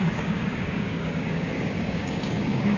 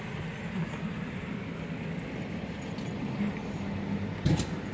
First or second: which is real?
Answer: second